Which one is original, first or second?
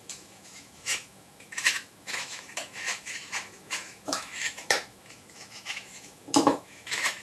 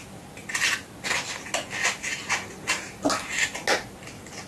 second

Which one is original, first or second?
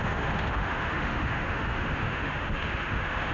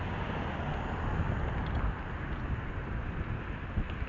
second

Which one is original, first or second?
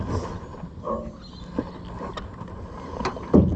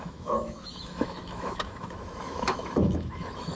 first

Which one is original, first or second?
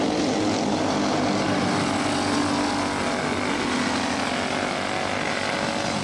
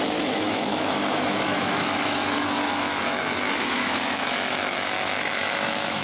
first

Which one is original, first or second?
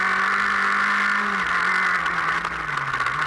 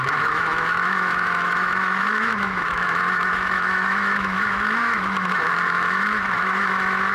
first